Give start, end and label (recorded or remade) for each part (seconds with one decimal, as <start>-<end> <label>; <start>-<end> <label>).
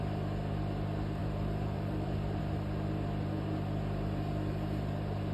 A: 0.0-1.2 recorded; 1.2-2.4 remade; 2.4-5.3 recorded